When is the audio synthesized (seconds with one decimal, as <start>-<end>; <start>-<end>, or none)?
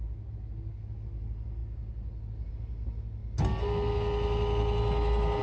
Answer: none